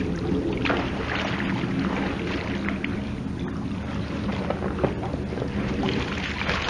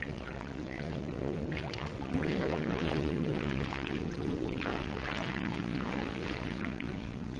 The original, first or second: first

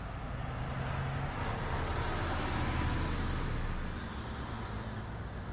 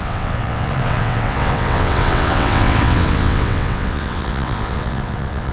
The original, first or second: first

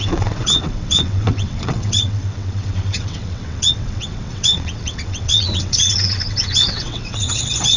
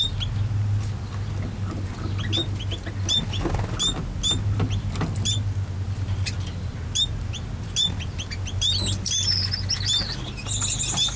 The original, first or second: second